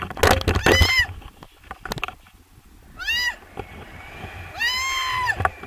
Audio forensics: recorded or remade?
recorded